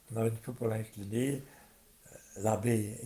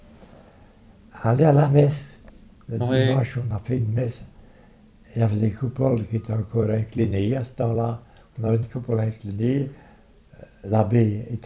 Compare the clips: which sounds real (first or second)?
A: first